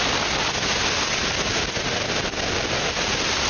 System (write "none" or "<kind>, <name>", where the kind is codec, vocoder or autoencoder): none